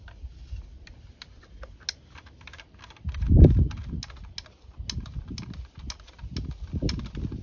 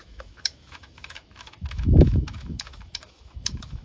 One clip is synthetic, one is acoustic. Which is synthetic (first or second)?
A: second